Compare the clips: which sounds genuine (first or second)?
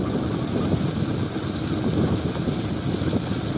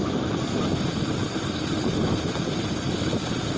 first